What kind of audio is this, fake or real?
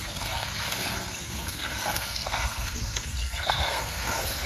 fake